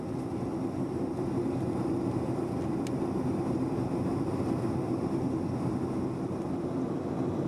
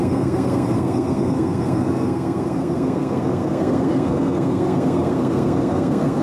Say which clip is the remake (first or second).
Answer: second